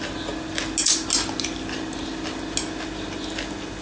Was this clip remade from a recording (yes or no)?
no